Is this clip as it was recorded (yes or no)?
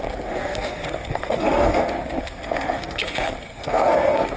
no